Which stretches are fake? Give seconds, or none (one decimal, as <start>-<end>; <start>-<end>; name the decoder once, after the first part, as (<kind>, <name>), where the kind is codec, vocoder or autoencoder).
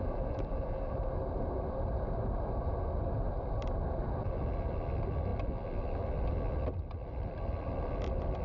none